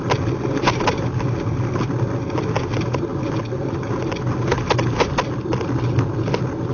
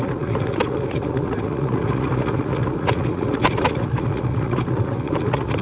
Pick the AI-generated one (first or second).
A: second